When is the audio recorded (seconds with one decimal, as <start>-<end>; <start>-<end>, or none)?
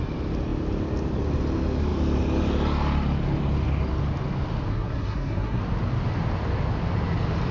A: 0.0-4.7; 5.6-7.5